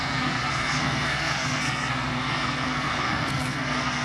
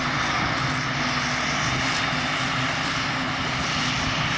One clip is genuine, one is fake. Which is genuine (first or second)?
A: second